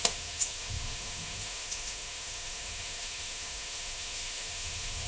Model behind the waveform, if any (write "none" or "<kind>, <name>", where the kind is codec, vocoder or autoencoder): autoencoder, DAC-VAE